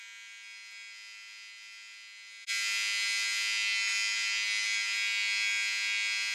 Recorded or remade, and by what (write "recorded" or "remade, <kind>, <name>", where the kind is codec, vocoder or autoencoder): recorded